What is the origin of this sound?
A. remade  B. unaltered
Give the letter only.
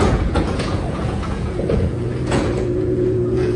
A